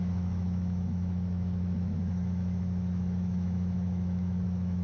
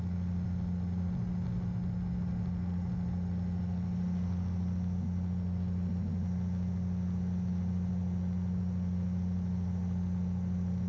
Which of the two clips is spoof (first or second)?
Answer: first